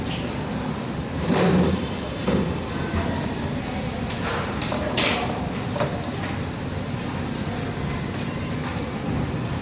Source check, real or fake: real